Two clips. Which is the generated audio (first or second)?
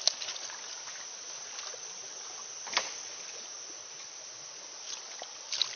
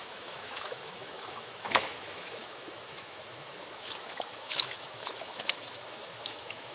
second